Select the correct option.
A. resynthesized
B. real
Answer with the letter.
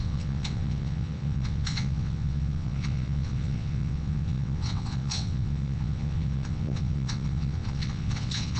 A